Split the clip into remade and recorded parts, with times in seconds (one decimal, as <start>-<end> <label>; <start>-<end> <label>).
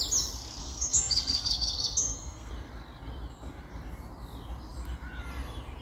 0.0-0.6 recorded; 0.6-2.5 remade; 2.5-5.8 recorded